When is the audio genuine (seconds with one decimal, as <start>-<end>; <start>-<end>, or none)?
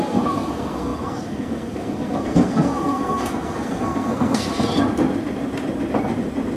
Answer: 4.5-6.6